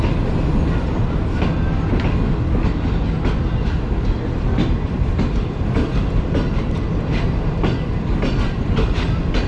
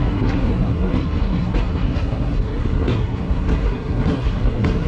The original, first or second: first